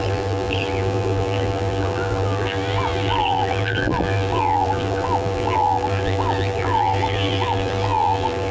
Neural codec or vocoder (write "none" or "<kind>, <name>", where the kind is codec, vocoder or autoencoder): vocoder, BigVGAN v2